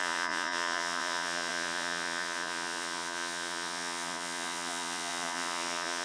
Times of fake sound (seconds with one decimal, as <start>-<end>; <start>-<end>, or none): 0.0-6.0